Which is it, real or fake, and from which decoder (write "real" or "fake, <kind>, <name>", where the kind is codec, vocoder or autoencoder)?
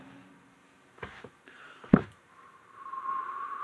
fake, vocoder, BigVGAN v2